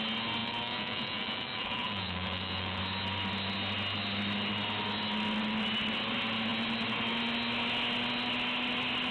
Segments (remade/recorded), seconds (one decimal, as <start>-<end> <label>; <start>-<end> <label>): 0.0-0.4 recorded; 0.4-2.8 remade; 2.8-9.1 recorded